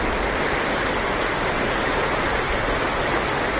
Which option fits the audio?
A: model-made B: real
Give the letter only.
B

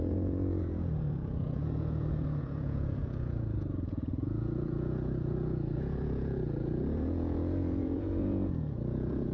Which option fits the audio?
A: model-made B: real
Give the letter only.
A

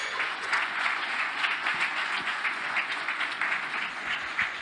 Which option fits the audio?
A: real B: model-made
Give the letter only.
B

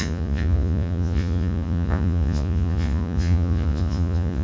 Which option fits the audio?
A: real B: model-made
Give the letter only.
B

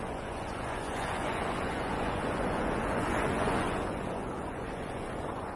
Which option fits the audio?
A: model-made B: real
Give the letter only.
A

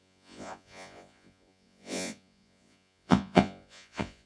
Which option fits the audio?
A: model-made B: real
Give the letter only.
A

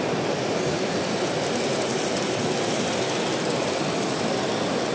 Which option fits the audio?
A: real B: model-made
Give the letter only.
A